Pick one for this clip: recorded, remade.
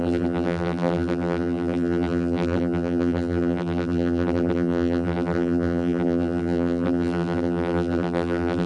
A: remade